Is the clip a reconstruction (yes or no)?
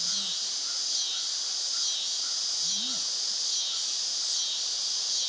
no